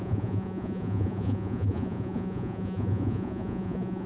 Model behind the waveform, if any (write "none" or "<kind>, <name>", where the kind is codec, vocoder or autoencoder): vocoder, Vocos